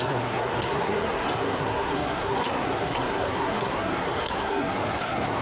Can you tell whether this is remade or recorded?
remade